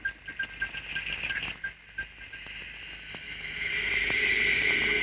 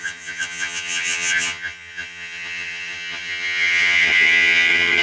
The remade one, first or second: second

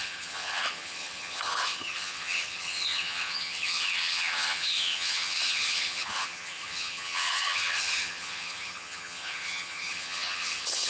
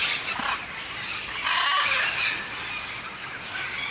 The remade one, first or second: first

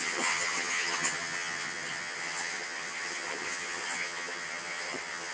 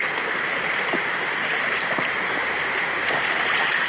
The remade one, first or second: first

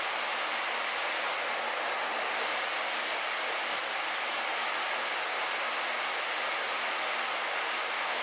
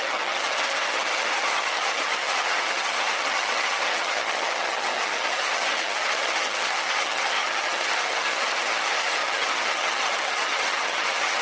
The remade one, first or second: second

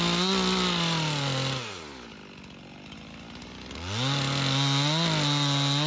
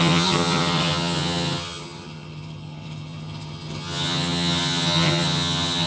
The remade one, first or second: second